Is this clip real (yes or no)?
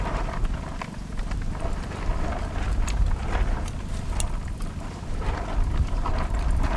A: no